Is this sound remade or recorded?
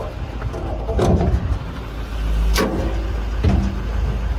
recorded